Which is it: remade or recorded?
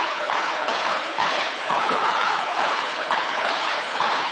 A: remade